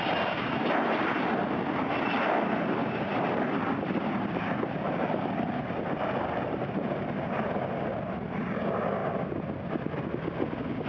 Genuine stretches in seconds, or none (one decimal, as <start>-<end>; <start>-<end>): 0.0-3.1; 7.5-10.9